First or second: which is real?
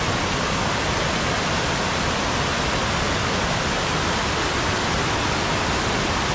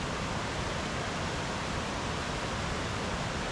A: first